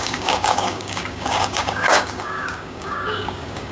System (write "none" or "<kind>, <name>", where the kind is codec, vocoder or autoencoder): codec, DAC